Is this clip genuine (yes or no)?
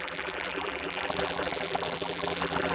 no